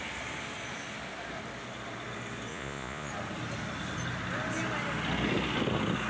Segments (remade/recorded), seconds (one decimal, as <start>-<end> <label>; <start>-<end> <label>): 0.0-2.5 recorded; 2.5-3.1 remade; 3.1-6.1 recorded